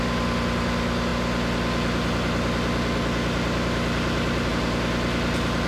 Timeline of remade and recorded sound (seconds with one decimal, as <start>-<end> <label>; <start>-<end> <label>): 0.0-5.7 recorded